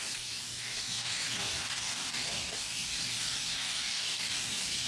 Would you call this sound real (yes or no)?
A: no